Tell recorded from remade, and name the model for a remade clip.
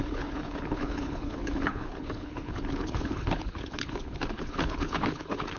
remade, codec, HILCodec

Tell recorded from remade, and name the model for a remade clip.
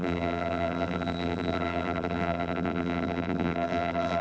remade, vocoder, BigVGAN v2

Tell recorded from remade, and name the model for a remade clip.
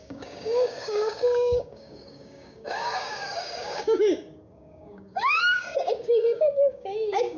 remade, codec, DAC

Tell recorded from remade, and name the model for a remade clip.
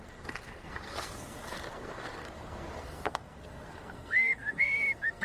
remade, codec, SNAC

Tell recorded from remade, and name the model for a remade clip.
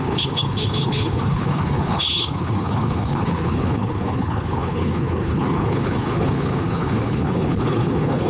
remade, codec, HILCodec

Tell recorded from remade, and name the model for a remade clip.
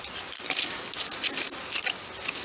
recorded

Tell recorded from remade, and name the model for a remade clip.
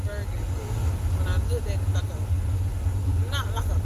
recorded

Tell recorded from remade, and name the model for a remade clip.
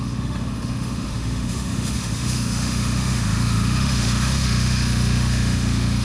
remade, autoencoder, DAC-VAE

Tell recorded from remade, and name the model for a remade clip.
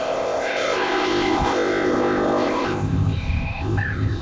remade, codec, ZipCodec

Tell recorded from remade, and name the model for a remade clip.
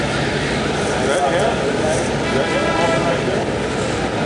recorded